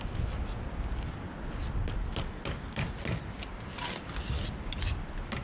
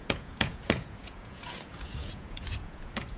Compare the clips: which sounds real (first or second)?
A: first